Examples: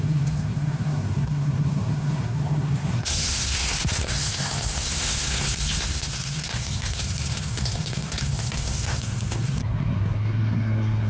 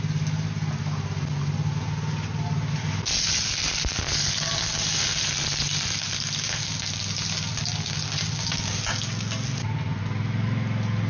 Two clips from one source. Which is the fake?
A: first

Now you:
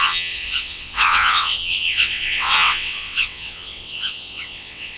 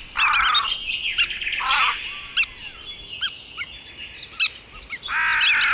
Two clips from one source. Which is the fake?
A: first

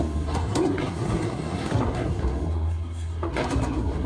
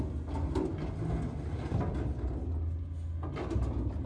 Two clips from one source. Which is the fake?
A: first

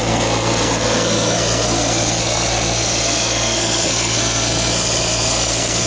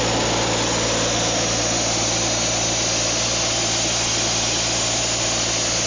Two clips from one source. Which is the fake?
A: first